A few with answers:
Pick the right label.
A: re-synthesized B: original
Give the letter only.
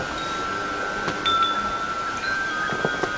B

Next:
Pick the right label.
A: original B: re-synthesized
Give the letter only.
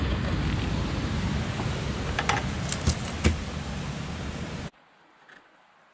A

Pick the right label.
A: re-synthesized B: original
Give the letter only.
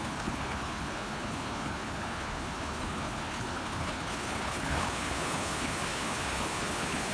A